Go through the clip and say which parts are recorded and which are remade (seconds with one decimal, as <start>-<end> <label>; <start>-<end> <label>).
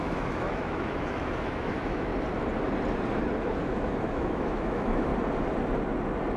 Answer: 0.0-2.1 remade; 2.1-3.6 recorded; 3.6-5.1 remade; 5.1-6.4 recorded